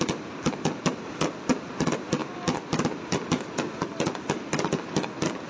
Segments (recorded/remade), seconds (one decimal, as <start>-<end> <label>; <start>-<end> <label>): 0.0-5.5 recorded